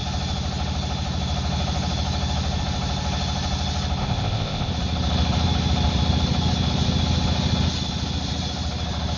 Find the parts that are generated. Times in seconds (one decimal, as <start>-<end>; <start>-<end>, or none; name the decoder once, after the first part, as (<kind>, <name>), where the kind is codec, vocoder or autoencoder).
4.0-4.7 (codec, ZipCodec)